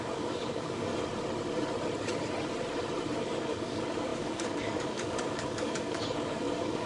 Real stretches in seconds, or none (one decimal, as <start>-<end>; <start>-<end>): 0.9-3.4